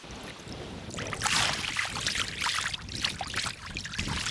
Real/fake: real